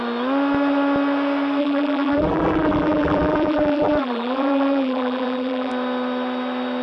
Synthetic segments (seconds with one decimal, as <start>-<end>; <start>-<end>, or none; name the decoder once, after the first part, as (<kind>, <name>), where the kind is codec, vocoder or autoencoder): 1.6-5.7 (vocoder, BigVGAN v2)